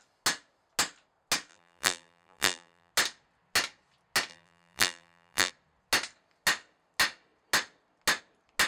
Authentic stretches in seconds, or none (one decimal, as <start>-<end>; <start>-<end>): 0.0-1.5; 2.9-4.3; 5.5-8.7